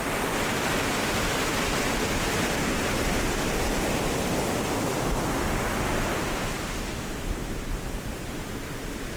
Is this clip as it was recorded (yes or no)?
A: yes